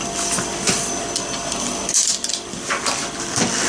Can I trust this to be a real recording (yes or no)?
yes